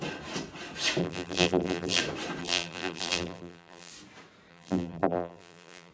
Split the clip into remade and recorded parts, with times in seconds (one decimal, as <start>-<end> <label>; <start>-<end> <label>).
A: 0.0-1.0 recorded; 1.0-2.0 remade; 2.0-2.4 recorded; 2.4-3.9 remade; 3.9-4.5 recorded; 4.5-5.9 remade